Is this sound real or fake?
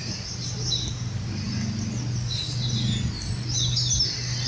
real